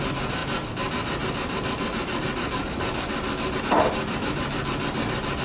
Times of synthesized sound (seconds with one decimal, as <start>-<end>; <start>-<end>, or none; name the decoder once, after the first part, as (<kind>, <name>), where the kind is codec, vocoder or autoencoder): 0.0-0.4 (vocoder, BigVGAN v2); 3.6-5.4